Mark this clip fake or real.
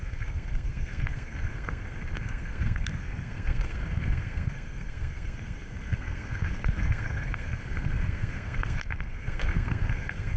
fake